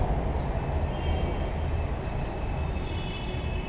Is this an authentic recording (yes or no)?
yes